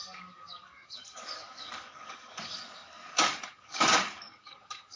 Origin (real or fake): fake